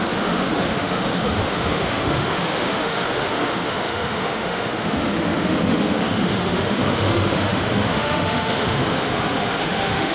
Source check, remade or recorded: remade